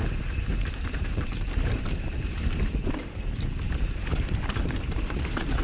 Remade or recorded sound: remade